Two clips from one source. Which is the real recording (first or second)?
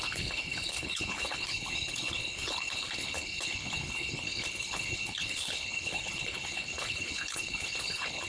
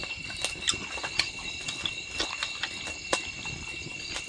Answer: second